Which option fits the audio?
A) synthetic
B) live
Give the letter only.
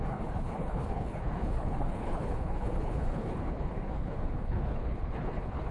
A